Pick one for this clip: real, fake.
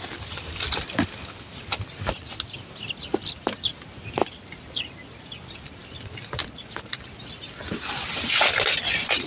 real